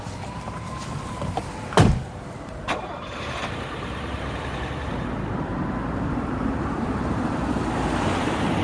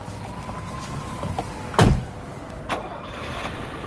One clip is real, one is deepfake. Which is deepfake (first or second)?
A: first